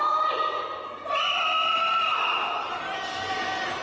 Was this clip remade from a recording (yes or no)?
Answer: no